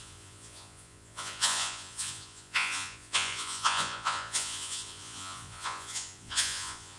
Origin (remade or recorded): remade